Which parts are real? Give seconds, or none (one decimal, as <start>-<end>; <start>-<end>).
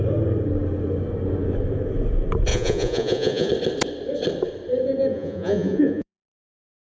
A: 0.0-2.5; 3.5-5.1; 6.5-6.9